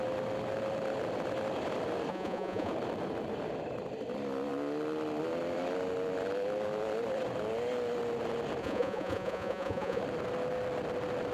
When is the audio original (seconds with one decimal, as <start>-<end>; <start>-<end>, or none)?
0.0-2.1; 2.7-8.6; 10.0-11.3